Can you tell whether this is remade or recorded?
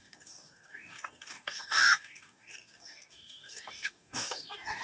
remade